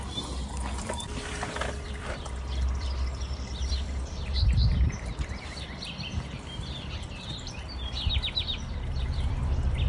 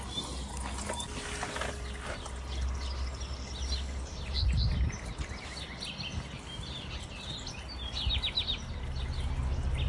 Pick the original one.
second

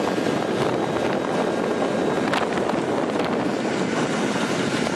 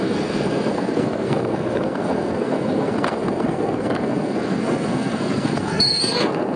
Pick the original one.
first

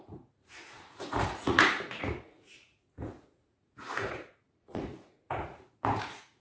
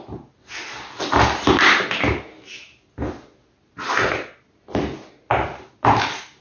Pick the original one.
second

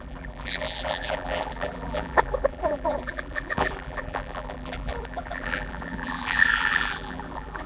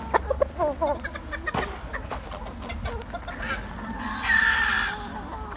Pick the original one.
second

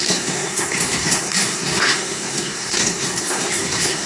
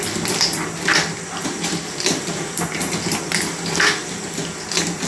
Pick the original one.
second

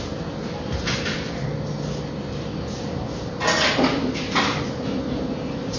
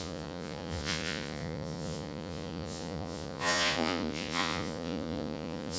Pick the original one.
first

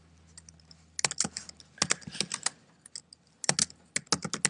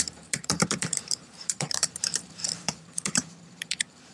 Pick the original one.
first